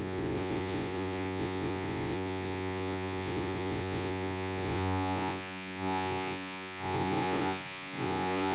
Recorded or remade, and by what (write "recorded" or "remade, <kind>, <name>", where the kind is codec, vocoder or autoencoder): remade, vocoder, Vocos